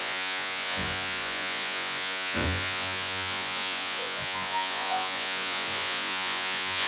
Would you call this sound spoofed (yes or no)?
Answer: yes